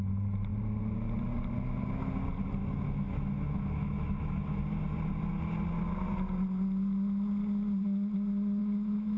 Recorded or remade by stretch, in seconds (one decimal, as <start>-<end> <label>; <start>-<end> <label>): 0.0-2.6 recorded; 2.6-4.6 remade; 4.6-8.6 recorded; 8.6-9.2 remade